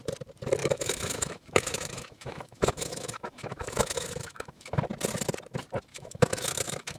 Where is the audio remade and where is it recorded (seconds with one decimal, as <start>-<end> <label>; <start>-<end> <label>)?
0.0-0.6 recorded; 0.6-4.8 remade; 4.8-5.9 recorded; 5.9-7.0 remade